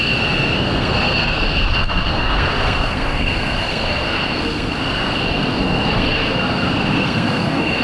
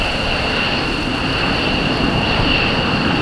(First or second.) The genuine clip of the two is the second